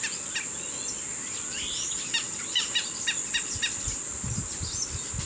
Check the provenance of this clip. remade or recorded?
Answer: remade